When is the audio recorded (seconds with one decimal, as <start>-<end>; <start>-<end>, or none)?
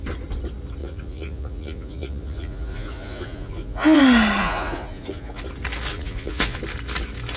0.0-0.8; 4.0-4.4; 5.4-5.9; 6.6-7.4